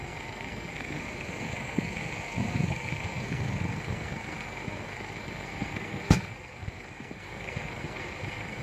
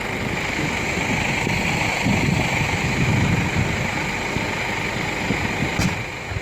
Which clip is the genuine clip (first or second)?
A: second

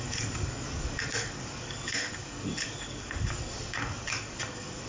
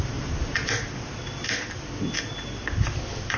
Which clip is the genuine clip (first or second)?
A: second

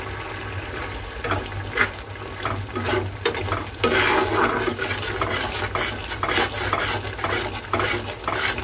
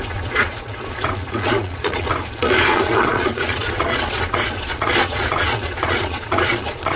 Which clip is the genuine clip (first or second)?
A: first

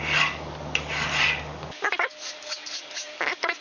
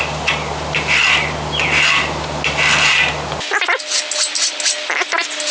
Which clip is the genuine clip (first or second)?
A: second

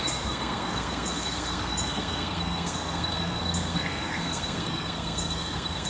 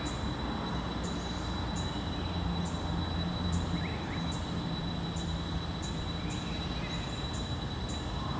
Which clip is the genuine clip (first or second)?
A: second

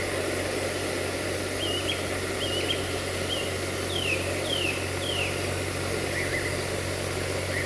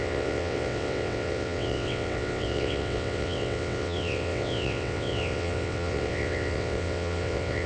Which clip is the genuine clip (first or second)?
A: first